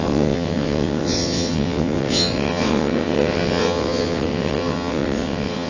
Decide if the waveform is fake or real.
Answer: fake